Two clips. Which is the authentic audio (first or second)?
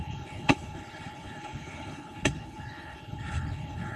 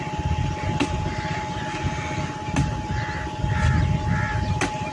second